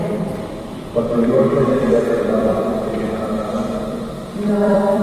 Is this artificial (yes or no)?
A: yes